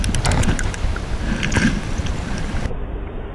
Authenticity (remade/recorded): recorded